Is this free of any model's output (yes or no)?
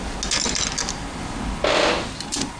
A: yes